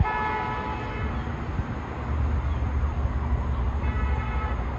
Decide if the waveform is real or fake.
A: real